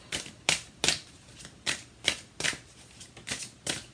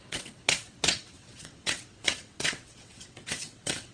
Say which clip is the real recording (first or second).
first